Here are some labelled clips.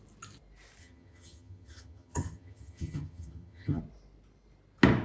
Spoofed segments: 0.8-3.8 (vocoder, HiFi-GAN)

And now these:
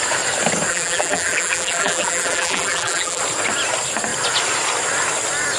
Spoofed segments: 0.7-3.2 (vocoder, BigVGAN v2)

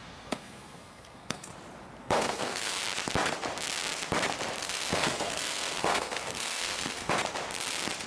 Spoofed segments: 0.0-1.5 (codec, SNAC); 2.0-2.8; 4.6-7.1

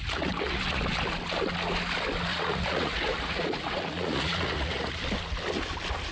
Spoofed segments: 0.0-0.8 (vocoder, Vocos); 2.3-5.0

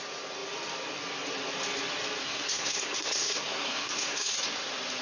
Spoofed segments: 2.2-4.3 (codec, SNAC)

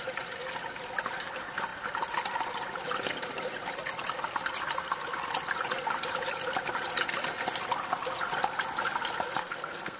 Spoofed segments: 9.4-10.0 (codec, SNAC)

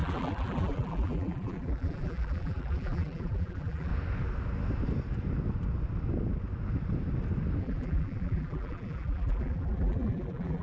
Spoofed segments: 0.0-3.9 (vocoder, BigVGAN v2); 7.6-10.6

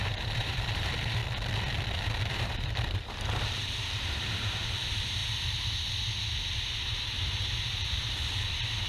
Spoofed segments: 0.0-1.2 (vocoder, BigVGAN v2); 1.9-5.2; 6.9-8.9